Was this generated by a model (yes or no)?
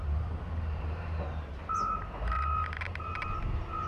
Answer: yes